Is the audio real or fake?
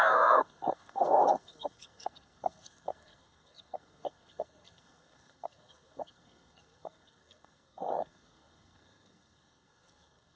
fake